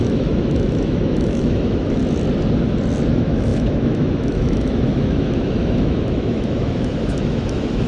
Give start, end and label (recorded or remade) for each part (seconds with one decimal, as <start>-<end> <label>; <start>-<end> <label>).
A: 0.0-2.0 remade; 2.0-3.1 recorded; 3.1-7.9 remade